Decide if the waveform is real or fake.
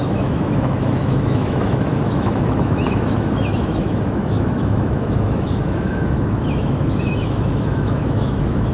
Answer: fake